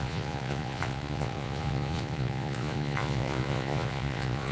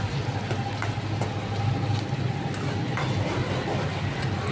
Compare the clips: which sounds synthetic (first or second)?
first